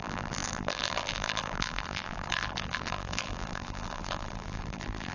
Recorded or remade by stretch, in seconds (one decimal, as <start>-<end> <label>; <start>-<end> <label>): 0.0-5.1 remade

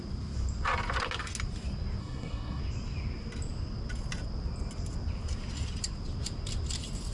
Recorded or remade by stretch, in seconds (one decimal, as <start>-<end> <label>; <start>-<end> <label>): 0.0-2.0 recorded; 2.0-2.6 remade; 2.6-7.1 recorded